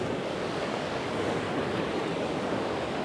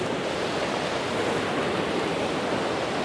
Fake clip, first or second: first